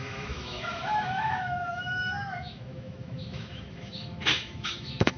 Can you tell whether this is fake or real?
fake